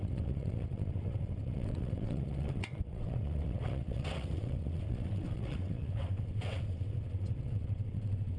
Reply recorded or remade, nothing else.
remade